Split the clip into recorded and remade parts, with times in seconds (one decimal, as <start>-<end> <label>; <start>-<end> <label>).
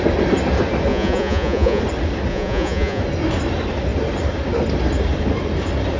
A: 0.0-0.9 recorded; 0.9-1.8 remade; 1.8-2.3 recorded; 2.3-3.0 remade; 3.0-6.0 recorded